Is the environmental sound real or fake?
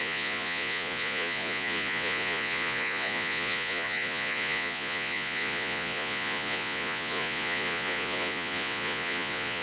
fake